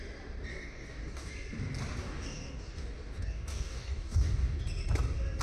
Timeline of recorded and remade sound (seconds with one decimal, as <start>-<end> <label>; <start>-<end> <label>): 0.0-0.5 recorded; 0.5-1.3 remade; 1.3-2.0 recorded; 2.0-4.6 remade; 4.6-5.4 recorded